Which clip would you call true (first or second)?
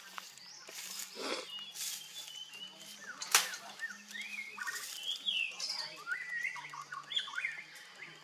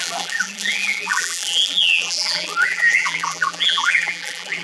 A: first